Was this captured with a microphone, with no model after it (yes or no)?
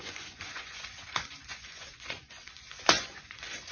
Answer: no